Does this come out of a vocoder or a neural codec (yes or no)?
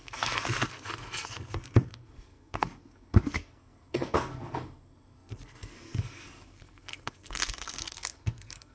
yes